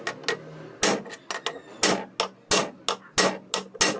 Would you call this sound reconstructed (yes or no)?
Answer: no